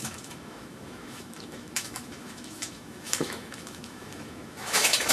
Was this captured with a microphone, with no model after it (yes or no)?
no